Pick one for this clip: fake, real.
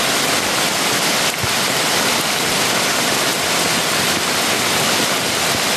real